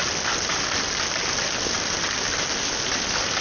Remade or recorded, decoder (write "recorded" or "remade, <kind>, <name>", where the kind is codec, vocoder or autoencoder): recorded